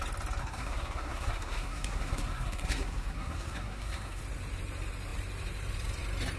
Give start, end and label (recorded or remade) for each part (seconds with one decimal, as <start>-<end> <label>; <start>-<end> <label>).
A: 0.0-0.4 recorded; 0.4-4.2 remade; 4.2-6.4 recorded